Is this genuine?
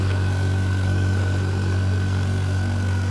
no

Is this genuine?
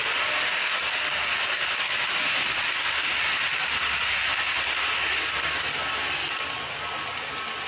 yes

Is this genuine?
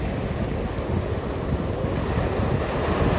yes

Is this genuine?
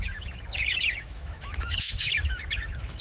no